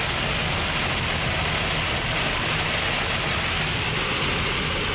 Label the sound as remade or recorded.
recorded